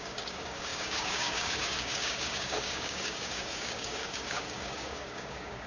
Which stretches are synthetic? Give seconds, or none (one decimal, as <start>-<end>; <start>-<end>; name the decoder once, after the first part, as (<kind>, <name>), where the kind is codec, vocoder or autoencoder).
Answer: 0.0-5.7 (codec, DAC)